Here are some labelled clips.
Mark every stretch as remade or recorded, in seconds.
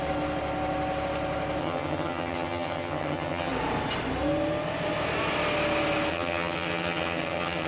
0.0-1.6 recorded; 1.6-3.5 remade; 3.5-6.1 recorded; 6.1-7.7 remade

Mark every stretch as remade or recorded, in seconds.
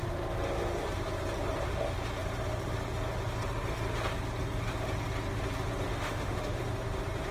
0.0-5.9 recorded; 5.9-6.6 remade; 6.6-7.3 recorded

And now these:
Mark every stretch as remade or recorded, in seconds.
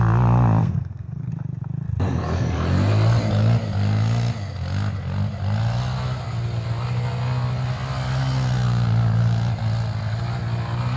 0.0-0.6 recorded; 0.6-1.3 remade; 1.3-11.0 recorded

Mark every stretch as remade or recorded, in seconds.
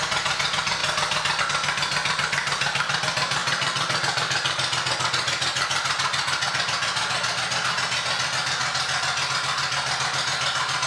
0.0-10.9 recorded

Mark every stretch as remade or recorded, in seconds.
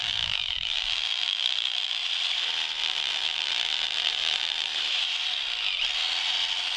0.0-2.0 remade; 2.0-2.8 recorded; 2.8-4.7 remade; 4.7-6.8 recorded